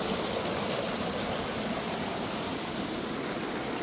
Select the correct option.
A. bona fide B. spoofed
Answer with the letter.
A